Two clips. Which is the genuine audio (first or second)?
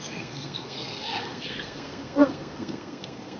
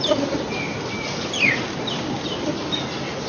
second